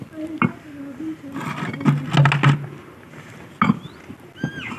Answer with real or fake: real